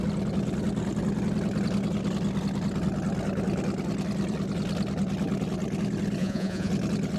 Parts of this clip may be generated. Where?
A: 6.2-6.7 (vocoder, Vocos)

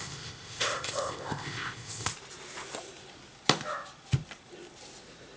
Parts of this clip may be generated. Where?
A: 0.0-2.1 (codec, ZipCodec)